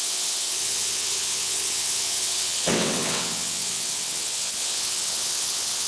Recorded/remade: remade